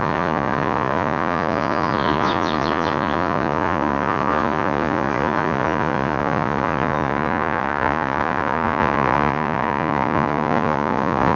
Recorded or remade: remade